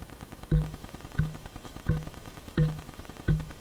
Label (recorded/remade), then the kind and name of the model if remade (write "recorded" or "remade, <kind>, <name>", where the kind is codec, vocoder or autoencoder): remade, autoencoder, DAC-VAE